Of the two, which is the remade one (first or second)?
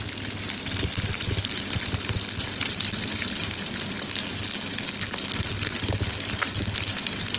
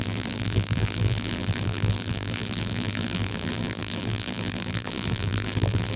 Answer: second